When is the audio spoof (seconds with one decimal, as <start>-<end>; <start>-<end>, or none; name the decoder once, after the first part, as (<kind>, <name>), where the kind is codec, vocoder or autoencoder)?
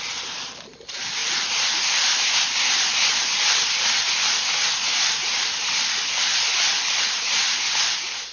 none